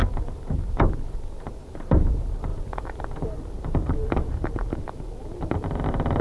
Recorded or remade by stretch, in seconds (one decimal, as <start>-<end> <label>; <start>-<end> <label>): 0.0-2.5 remade; 2.5-3.3 recorded; 3.3-6.2 remade